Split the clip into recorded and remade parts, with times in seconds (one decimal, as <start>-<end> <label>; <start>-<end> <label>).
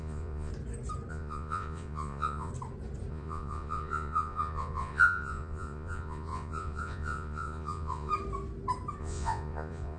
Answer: 0.0-0.5 remade; 0.5-1.1 recorded; 1.1-2.5 remade; 2.5-3.1 recorded; 3.1-8.1 remade; 8.1-9.0 recorded; 9.0-10.0 remade